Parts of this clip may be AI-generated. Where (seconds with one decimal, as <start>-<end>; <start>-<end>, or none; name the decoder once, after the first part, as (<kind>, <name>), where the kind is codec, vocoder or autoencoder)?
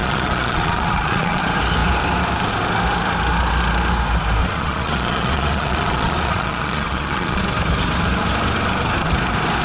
0.0-1.4 (vocoder, Vocos); 4.4-7.4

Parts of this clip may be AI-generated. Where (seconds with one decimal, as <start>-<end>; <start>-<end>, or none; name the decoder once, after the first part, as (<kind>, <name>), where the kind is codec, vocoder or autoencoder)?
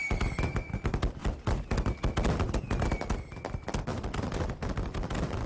1.2-1.9 (vocoder, BigVGAN v2); 3.9-4.6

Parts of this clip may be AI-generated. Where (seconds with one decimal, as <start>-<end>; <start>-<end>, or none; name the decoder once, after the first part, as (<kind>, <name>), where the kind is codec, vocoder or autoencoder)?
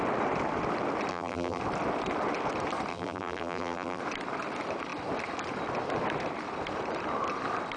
1.1-1.6 (vocoder, BigVGAN v2); 2.9-4.0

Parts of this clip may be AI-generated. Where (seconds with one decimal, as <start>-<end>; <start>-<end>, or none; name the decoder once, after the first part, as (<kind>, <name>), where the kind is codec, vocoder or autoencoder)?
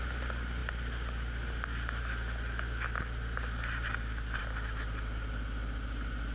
none